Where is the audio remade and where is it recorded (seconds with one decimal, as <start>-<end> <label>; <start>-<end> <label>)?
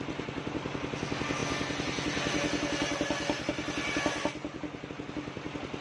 0.0-5.8 recorded